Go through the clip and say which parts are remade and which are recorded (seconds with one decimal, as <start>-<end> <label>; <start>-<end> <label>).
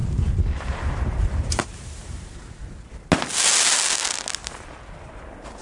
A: 0.0-2.2 remade; 2.2-5.6 recorded